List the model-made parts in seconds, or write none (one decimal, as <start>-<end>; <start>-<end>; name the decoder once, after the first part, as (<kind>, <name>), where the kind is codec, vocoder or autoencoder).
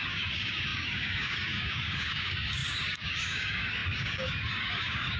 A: 0.0-5.2 (codec, DAC)